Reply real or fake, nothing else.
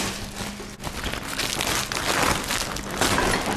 real